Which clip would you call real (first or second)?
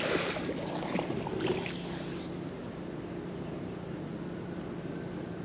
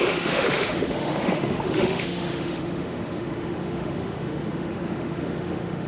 first